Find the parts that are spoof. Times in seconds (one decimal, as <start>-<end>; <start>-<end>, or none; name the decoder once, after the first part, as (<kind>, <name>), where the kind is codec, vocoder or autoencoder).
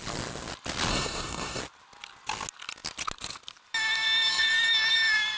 0.9-1.6 (codec, SNAC)